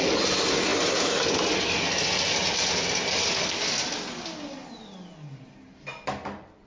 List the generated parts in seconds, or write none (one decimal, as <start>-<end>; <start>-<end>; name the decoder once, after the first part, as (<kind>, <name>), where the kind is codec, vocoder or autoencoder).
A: none

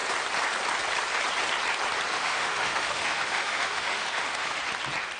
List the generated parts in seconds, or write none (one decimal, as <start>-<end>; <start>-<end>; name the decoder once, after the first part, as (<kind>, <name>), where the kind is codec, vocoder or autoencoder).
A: 2.1-4.6 (autoencoder, DAC-VAE)

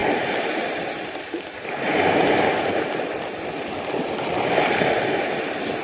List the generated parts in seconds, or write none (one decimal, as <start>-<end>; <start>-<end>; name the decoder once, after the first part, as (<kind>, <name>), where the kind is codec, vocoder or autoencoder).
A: 0.0-2.6 (vocoder, BigVGAN v2)

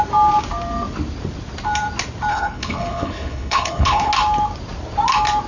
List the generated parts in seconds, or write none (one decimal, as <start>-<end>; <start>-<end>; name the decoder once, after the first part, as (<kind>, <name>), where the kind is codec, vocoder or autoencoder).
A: 2.3-4.1 (codec, HILCodec)

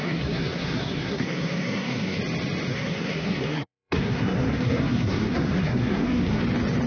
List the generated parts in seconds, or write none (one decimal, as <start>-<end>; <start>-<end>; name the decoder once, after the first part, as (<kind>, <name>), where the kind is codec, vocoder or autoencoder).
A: 0.0-2.2 (codec, SNAC); 2.7-6.4